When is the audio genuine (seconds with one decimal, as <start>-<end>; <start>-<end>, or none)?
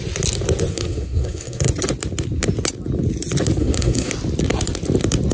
0.0-0.7; 1.7-3.6; 4.1-5.3